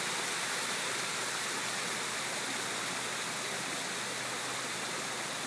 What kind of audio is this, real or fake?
real